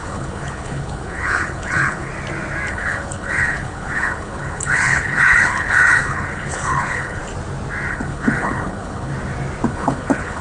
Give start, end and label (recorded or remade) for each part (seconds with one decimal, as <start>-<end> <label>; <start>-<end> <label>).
0.0-2.1 remade; 2.1-2.7 recorded; 2.7-7.2 remade; 7.2-7.9 recorded; 7.9-9.1 remade; 9.1-9.7 recorded; 9.7-10.4 remade